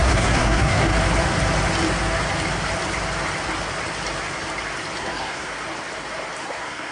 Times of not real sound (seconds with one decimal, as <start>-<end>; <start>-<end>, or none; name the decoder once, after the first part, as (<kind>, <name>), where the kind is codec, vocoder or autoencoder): 0.0-0.9 (codec, SNAC); 5.0-5.5; 6.4-6.9